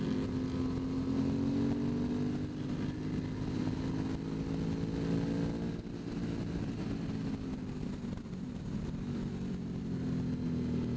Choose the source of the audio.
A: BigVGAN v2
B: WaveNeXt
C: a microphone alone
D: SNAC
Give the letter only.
C